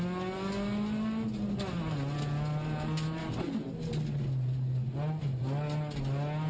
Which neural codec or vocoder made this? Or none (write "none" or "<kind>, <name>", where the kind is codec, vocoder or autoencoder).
none